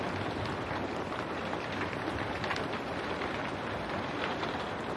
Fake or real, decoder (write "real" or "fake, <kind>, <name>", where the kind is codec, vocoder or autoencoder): real